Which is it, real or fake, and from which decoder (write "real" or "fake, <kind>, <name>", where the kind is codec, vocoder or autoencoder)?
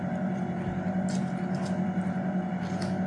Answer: real